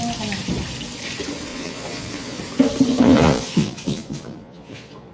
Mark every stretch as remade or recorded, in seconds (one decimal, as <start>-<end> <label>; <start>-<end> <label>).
0.0-1.5 recorded; 1.5-2.4 remade; 2.4-2.9 recorded; 2.9-5.1 remade